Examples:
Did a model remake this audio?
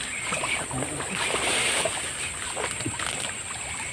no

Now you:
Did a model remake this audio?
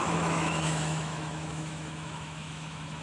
yes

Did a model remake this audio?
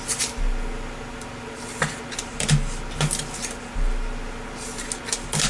no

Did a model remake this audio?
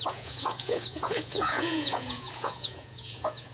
yes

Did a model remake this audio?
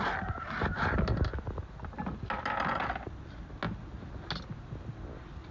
no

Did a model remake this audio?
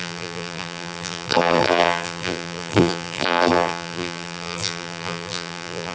yes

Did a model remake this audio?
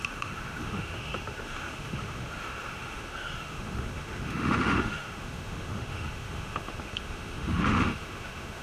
yes